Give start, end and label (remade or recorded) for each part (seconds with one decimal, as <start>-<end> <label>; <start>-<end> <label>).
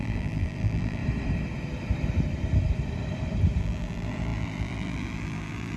0.0-1.0 remade; 1.0-3.6 recorded; 3.6-5.8 remade